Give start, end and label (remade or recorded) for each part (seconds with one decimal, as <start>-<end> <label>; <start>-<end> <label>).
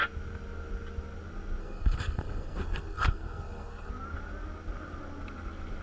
0.0-1.6 recorded; 1.6-3.9 remade; 3.9-5.8 recorded